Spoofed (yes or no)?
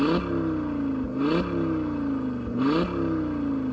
no